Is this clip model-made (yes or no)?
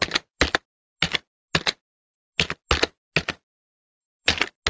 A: no